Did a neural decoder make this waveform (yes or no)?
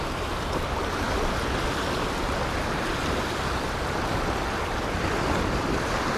no